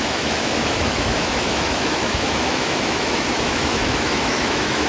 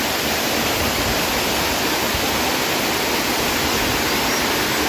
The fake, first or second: first